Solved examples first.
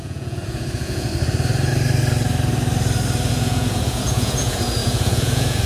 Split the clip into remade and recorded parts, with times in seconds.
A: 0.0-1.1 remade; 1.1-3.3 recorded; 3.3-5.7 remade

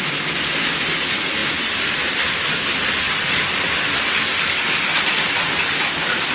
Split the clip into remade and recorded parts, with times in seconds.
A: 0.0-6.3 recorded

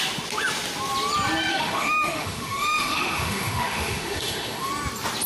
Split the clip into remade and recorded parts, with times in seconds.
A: 0.0-1.5 recorded; 1.5-4.7 remade; 4.7-5.3 recorded